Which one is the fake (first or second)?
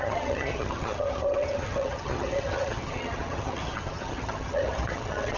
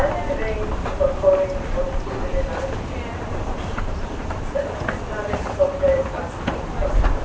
first